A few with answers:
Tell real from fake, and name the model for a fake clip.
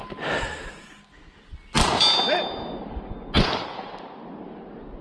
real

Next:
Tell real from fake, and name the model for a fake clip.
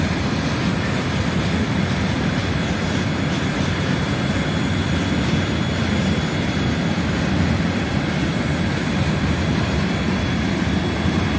real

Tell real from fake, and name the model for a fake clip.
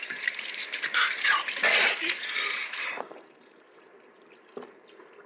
fake, vocoder, BigVGAN v2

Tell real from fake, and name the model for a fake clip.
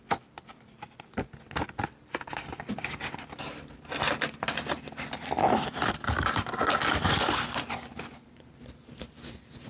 real